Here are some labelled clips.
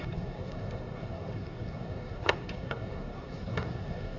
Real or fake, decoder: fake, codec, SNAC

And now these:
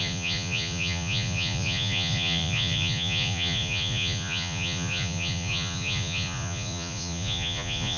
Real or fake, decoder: fake, vocoder, Vocos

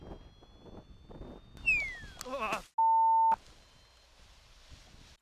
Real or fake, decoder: real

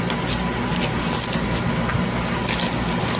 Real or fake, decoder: real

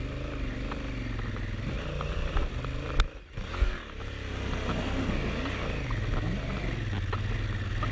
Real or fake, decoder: real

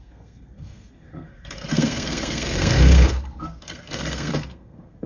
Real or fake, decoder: fake, codec, SNAC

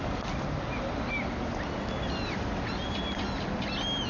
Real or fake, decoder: real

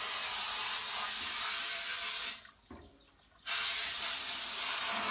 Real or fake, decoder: real